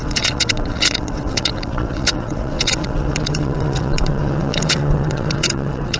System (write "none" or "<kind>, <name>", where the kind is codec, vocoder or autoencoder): vocoder, WaveNeXt